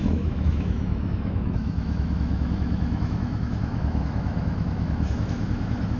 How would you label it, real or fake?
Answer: fake